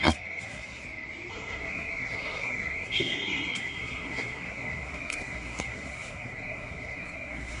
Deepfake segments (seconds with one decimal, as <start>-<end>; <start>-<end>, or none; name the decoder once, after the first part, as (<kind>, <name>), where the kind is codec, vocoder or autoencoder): 0.0-0.8 (codec, SNAC); 1.3-7.6